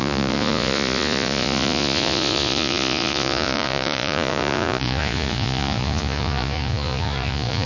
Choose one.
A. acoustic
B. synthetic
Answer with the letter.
B